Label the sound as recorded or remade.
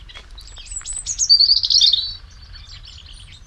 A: recorded